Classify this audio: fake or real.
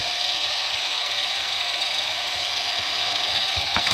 fake